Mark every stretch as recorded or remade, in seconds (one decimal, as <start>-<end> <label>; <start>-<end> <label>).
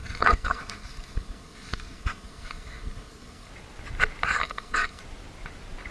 0.0-3.5 remade; 3.5-4.4 recorded; 4.4-5.0 remade; 5.0-5.9 recorded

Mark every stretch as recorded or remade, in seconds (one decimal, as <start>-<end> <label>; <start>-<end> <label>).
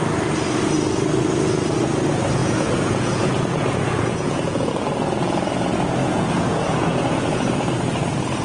0.0-2.4 recorded; 2.4-4.7 remade; 4.7-6.0 recorded; 6.0-7.5 remade; 7.5-8.4 recorded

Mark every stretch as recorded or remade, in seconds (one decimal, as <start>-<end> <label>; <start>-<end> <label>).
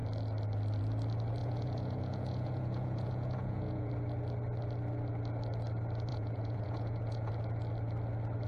0.0-1.4 recorded; 1.4-3.9 remade; 3.9-6.1 recorded; 6.1-7.3 remade; 7.3-8.5 recorded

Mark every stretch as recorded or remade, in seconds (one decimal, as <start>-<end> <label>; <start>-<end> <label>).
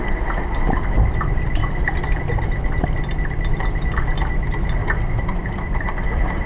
0.0-1.6 remade; 1.6-5.2 recorded; 5.2-6.5 remade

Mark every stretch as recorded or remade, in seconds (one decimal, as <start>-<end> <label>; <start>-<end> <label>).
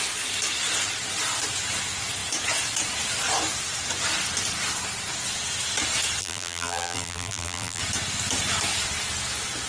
0.0-6.2 recorded; 6.2-7.8 remade; 7.8-9.7 recorded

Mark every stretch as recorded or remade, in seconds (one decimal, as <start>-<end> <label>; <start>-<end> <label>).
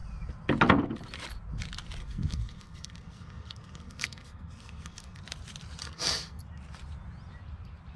0.0-2.0 recorded; 2.0-5.2 remade; 5.2-5.8 recorded; 5.8-6.4 remade; 6.4-8.0 recorded